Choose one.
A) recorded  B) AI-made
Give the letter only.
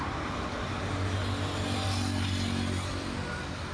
A